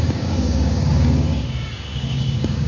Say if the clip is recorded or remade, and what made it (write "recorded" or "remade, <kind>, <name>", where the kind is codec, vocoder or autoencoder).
remade, codec, DAC